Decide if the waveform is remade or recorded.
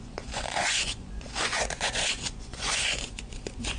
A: remade